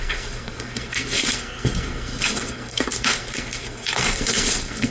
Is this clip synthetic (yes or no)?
yes